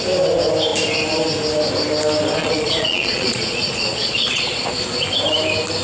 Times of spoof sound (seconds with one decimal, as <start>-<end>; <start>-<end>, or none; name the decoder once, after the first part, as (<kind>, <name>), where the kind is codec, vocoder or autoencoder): 2.4-4.7 (vocoder, Vocos)